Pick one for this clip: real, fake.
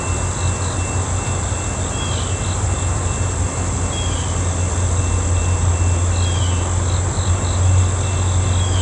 real